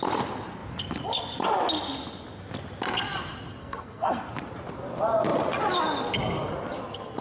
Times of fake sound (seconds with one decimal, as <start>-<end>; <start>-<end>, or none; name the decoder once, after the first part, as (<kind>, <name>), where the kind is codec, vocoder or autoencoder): 3.6-4.3 (codec, SNAC)